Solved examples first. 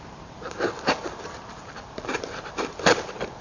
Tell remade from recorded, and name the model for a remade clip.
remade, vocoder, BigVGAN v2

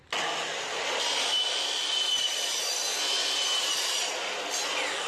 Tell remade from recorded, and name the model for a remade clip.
recorded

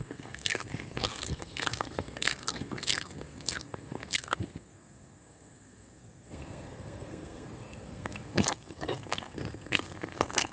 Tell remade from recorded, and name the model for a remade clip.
remade, codec, SNAC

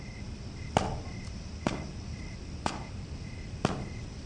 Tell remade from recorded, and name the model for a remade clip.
recorded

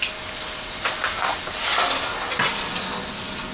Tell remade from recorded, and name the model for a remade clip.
recorded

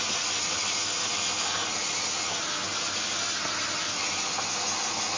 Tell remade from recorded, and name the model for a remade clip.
recorded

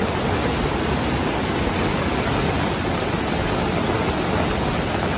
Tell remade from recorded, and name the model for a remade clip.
recorded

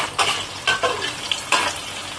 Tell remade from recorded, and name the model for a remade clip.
recorded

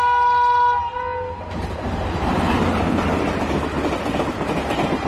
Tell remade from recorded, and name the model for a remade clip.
recorded